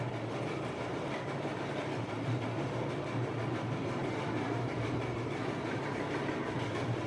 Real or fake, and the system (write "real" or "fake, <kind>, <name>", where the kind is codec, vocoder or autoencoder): real